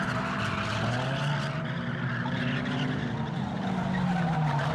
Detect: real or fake real